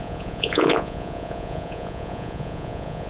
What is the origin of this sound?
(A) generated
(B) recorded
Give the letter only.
A